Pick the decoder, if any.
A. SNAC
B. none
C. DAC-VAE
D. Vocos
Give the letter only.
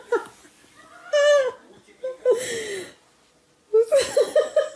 B